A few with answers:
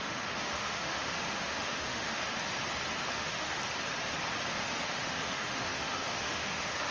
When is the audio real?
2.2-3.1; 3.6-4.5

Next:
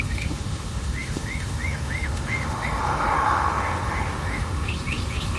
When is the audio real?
none

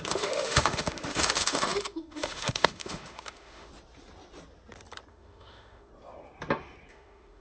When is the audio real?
3.7-5.1; 5.9-6.9